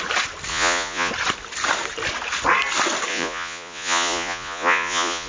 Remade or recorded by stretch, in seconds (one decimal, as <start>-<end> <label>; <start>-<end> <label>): 0.0-0.5 recorded; 0.5-1.1 remade; 1.1-3.1 recorded; 3.1-5.3 remade